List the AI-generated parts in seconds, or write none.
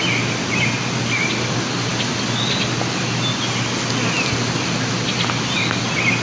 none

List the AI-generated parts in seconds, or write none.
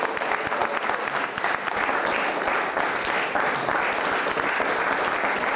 none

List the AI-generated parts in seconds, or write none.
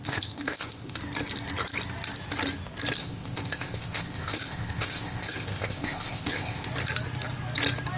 0.0-1.0 (codec, ZipCodec); 3.0-6.7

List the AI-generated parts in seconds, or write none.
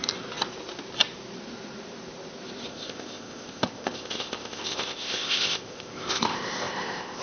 2.7-7.2 (codec, ZipCodec)